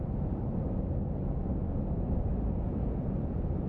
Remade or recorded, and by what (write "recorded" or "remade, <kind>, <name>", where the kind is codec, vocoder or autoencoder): recorded